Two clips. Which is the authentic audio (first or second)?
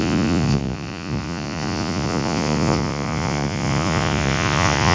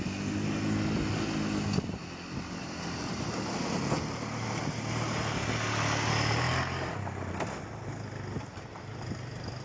second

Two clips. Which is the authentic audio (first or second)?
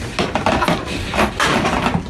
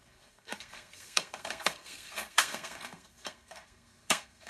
first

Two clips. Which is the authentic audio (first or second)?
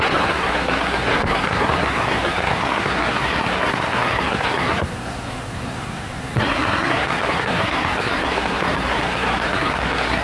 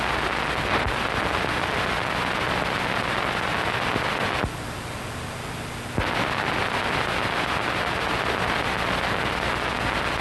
second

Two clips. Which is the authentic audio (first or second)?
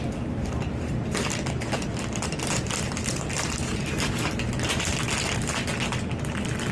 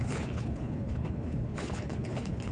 first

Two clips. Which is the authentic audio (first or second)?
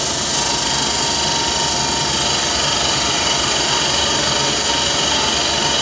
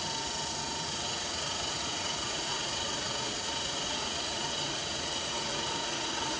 first